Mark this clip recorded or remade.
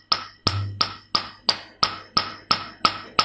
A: recorded